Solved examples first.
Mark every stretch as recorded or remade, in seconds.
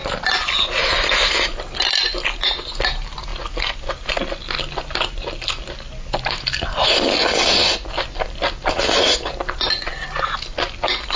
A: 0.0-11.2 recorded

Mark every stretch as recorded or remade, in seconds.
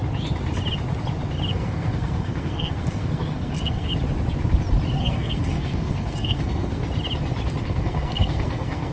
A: 0.0-1.5 recorded; 1.5-3.9 remade; 3.9-5.0 recorded; 5.0-6.8 remade; 6.8-7.6 recorded; 7.6-8.9 remade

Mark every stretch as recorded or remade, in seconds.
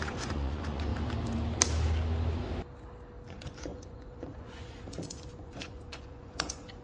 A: 0.0-0.9 remade; 0.9-3.3 recorded; 3.3-6.8 remade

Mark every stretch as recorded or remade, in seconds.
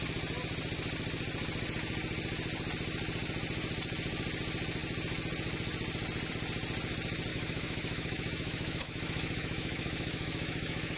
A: 0.0-7.3 recorded; 7.3-11.0 remade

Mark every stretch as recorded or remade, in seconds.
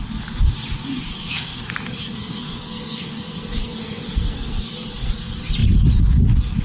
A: 0.0-1.1 recorded; 1.1-5.1 remade; 5.1-6.6 recorded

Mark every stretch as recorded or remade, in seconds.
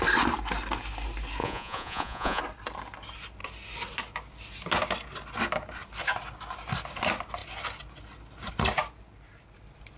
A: 0.0-1.4 recorded; 1.4-2.4 remade; 2.4-10.0 recorded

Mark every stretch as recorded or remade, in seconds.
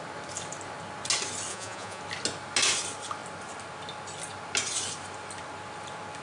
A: 0.0-1.5 recorded; 1.5-2.0 remade; 2.0-6.2 recorded